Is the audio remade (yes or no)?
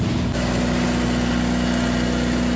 no